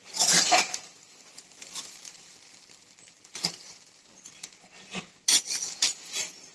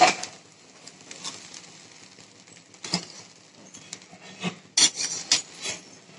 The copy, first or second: first